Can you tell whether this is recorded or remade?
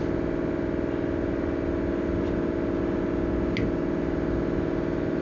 recorded